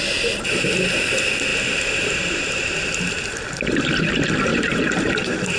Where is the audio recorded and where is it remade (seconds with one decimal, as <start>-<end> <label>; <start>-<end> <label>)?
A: 0.0-4.5 recorded; 4.5-5.6 remade